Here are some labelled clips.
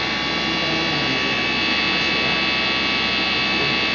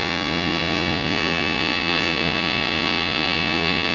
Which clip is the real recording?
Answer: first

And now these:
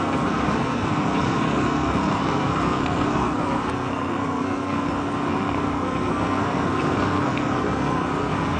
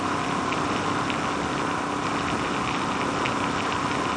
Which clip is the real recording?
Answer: second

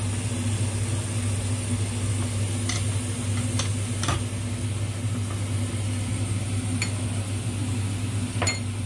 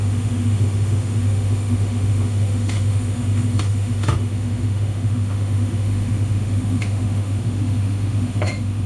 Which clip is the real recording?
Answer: first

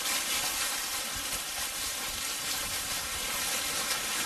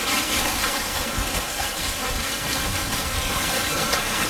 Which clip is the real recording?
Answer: first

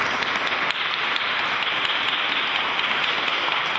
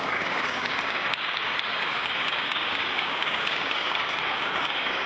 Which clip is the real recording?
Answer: first